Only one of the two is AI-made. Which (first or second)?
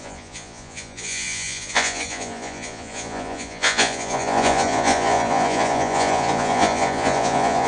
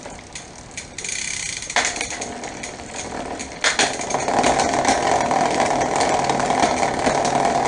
first